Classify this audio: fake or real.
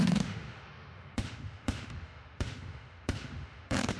fake